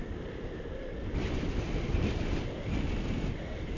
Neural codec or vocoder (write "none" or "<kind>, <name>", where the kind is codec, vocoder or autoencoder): none